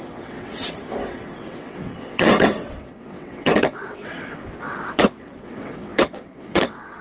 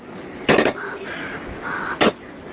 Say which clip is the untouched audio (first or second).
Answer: second